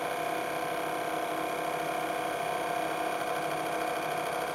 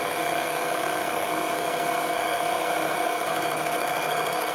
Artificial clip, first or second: second